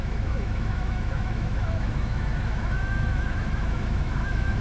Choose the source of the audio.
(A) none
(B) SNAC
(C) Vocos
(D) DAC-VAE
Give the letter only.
D